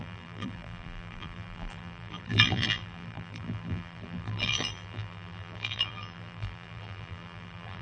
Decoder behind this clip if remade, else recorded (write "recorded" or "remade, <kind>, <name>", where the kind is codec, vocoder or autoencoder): remade, vocoder, BigVGAN v2